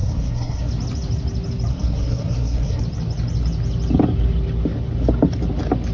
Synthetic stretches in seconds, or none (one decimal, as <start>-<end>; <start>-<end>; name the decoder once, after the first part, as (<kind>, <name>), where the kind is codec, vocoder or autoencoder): 0.0-0.7 (codec, SNAC); 1.7-2.8